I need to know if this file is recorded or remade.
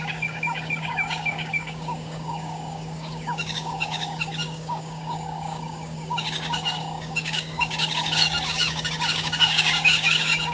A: remade